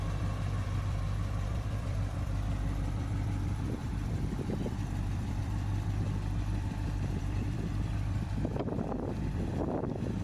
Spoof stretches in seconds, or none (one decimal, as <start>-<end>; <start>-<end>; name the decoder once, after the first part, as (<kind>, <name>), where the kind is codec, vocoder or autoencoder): 0.0-10.2 (vocoder, BigVGAN v2)